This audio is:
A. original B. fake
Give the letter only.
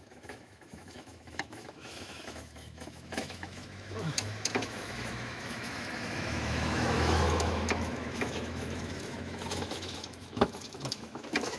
B